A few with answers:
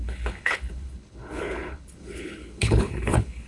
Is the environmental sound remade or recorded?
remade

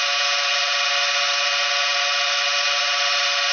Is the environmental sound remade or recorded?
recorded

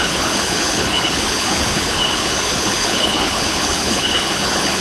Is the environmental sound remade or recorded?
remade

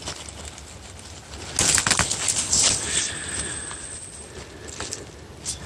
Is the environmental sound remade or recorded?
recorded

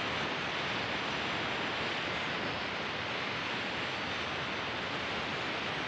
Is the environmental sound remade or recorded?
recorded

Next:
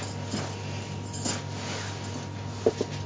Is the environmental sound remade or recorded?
recorded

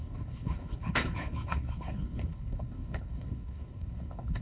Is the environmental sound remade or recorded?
remade